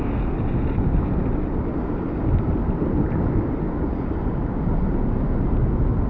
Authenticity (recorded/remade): recorded